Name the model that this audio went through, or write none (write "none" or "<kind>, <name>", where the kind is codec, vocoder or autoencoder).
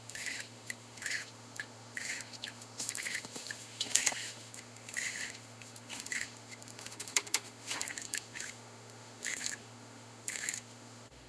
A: autoencoder, DAC-VAE